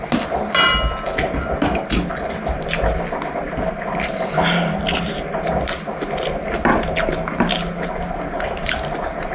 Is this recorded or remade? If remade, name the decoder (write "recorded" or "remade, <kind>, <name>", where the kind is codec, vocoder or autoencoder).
recorded